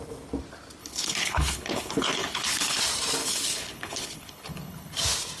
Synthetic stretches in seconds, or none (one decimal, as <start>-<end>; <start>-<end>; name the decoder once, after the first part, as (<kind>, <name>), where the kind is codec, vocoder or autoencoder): 0.8-2.8 (codec, HILCodec); 3.2-5.0